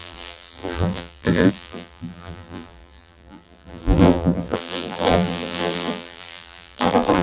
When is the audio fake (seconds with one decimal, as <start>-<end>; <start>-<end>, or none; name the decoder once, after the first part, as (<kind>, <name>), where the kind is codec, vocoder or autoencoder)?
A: 0.0-7.2 (vocoder, BigVGAN v2)